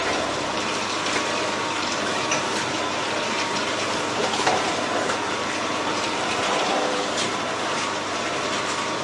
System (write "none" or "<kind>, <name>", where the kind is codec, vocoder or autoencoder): vocoder, BigVGAN v2